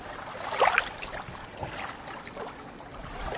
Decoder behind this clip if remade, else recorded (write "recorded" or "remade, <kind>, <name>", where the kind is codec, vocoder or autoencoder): recorded